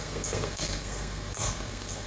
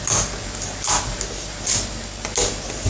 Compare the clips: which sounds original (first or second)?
second